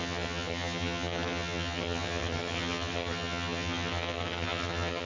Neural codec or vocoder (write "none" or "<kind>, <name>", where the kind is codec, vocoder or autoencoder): vocoder, HiFi-GAN